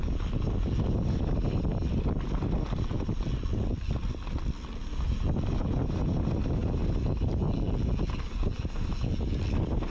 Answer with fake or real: real